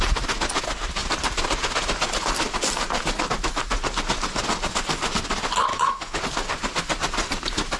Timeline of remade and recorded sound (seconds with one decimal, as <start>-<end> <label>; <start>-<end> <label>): 0.0-5.7 recorded; 5.7-6.2 remade; 6.2-7.8 recorded

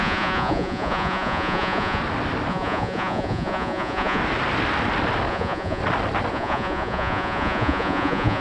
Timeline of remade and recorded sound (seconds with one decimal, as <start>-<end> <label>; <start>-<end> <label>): 0.0-2.0 remade; 2.0-2.5 recorded; 2.5-4.2 remade; 4.2-5.3 recorded; 5.3-5.8 remade; 5.8-6.3 recorded; 6.3-8.4 remade

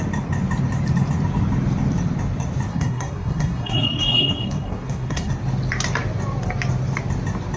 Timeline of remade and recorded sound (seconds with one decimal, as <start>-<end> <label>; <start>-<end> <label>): 0.0-2.7 recorded; 2.7-5.3 remade; 5.3-7.6 recorded